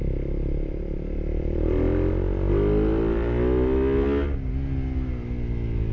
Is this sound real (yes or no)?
yes